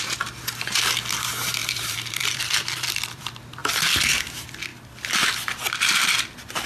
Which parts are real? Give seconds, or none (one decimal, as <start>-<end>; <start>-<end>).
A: 0.0-1.6; 3.2-3.6; 4.2-6.7